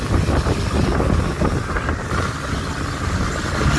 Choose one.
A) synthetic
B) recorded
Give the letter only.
B